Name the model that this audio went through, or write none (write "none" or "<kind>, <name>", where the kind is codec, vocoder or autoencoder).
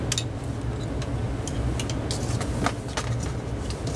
none